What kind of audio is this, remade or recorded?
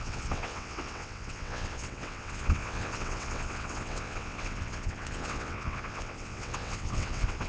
remade